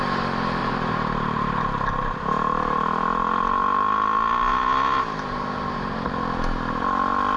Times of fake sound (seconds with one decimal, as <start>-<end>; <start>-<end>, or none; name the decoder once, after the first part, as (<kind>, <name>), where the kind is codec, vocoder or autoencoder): 0.6-1.6 (vocoder, BigVGAN v2); 4.5-6.1